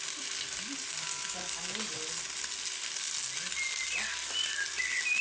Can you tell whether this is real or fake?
real